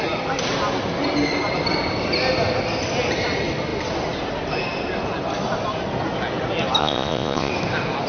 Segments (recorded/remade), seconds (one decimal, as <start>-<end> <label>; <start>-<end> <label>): 0.0-6.8 recorded; 6.8-7.5 remade; 7.5-8.1 recorded